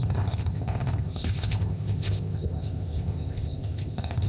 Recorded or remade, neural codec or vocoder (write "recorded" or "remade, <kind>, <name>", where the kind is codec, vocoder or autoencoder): remade, codec, ZipCodec